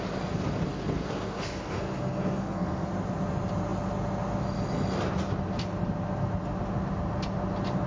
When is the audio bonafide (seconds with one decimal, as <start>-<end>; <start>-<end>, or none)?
0.0-0.7; 2.9-7.9